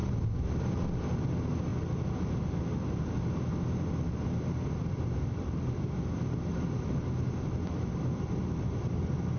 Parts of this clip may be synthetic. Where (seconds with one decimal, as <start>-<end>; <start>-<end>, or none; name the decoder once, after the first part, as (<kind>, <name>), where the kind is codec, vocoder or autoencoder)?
4.8-9.4 (vocoder, BigVGAN v2)